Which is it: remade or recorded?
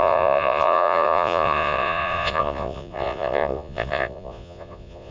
remade